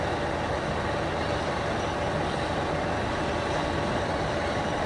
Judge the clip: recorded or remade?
recorded